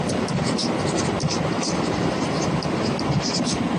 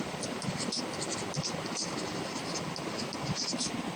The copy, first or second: first